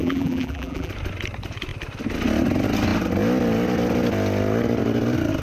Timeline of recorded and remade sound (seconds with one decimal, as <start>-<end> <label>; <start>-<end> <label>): 0.0-0.9 remade; 0.9-5.4 recorded